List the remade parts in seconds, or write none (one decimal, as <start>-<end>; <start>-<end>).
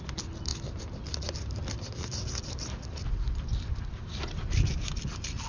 none